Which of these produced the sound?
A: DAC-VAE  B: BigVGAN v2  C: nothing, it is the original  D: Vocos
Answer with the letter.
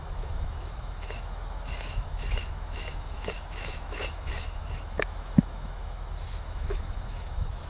A